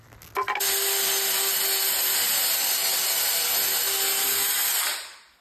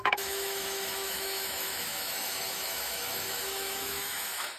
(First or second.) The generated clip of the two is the second